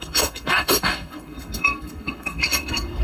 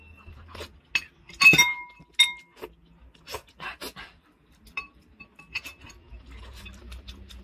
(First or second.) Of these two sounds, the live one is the second